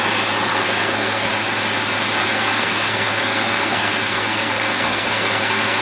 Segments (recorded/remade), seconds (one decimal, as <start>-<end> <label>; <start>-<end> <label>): 0.0-0.5 recorded; 0.5-1.3 remade; 1.3-2.2 recorded; 2.2-5.8 remade